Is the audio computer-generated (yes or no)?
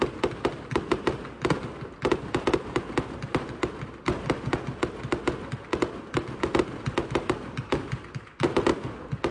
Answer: no